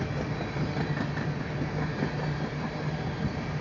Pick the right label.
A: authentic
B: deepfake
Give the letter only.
A